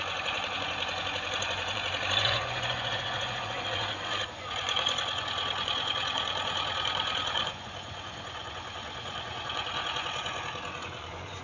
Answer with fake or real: fake